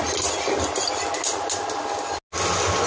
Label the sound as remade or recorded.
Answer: recorded